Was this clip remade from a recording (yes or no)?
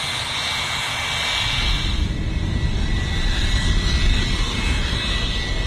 no